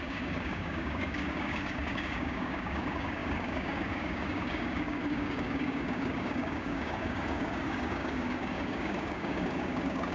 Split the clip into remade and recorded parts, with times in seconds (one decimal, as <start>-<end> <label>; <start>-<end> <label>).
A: 0.0-10.1 remade